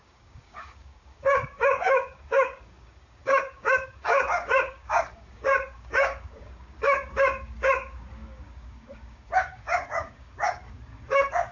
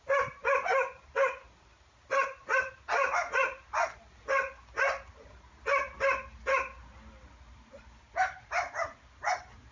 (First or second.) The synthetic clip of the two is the first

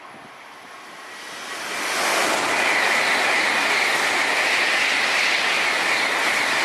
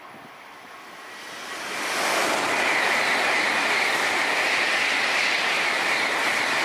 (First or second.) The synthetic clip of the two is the second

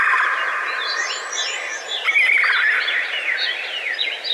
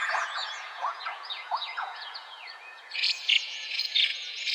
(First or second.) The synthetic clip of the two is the second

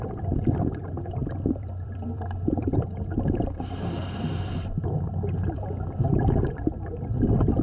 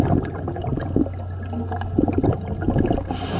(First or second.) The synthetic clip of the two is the first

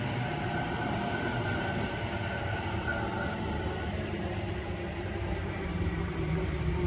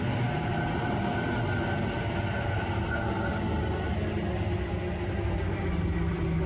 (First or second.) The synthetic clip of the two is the first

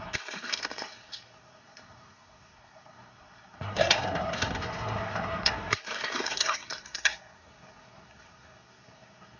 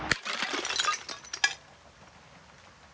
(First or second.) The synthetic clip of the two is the first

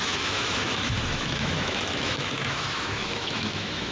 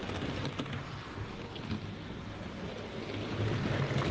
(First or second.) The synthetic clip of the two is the first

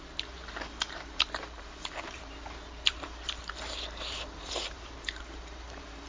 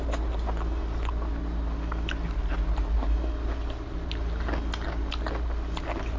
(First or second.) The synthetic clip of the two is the first